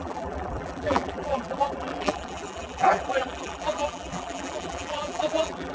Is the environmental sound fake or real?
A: fake